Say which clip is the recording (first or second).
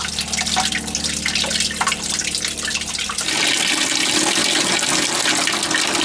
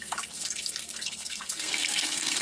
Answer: first